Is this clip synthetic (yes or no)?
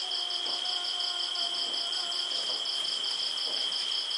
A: no